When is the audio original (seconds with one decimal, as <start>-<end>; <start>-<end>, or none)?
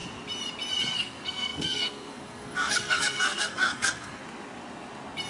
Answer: 0.0-0.9; 4.2-5.3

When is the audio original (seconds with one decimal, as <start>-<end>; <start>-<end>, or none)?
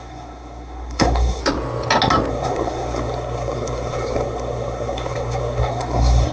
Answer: 1.4-2.3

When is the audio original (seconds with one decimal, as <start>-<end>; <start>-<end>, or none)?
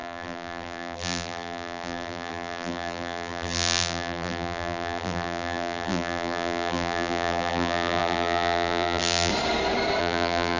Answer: 9.3-10.0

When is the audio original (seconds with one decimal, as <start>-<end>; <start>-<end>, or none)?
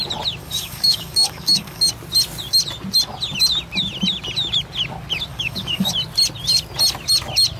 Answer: 0.0-0.4; 1.9-5.3; 5.9-7.6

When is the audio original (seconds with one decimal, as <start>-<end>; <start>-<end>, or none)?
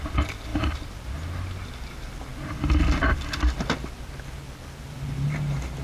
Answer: 0.0-5.8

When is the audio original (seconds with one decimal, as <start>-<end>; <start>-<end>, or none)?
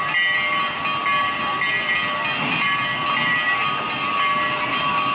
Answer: 0.0-5.1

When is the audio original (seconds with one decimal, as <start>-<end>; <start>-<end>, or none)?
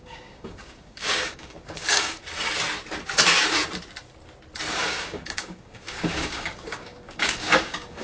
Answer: 2.2-4.7